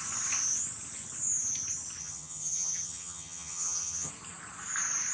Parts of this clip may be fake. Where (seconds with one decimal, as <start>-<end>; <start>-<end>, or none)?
2.0-4.1